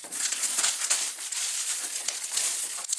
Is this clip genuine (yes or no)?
no